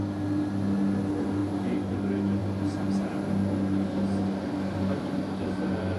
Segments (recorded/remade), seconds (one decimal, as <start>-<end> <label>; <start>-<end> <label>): 0.0-1.4 recorded; 1.4-1.9 remade; 1.9-6.0 recorded